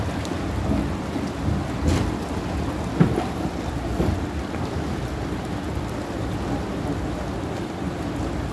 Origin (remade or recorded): recorded